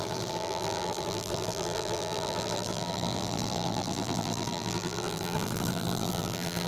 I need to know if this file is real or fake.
fake